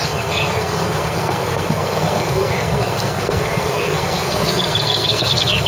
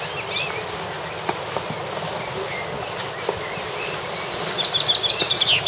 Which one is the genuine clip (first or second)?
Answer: second